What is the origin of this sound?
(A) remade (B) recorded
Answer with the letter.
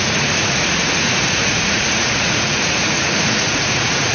A